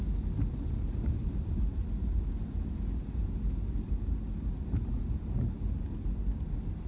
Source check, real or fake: real